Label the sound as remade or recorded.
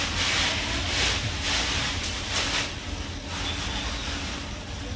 recorded